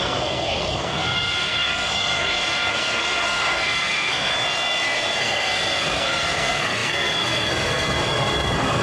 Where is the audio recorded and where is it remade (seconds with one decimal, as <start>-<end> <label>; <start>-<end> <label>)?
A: 0.0-4.3 remade; 4.3-5.2 recorded; 5.2-8.8 remade